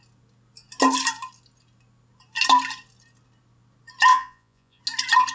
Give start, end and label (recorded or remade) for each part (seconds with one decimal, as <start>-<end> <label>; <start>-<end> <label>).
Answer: 0.0-4.1 recorded; 4.1-4.8 remade; 4.8-5.3 recorded